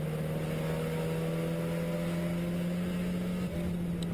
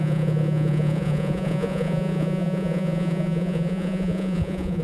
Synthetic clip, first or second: second